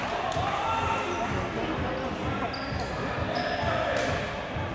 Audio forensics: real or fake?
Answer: real